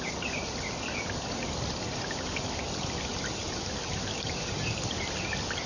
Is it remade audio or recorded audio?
recorded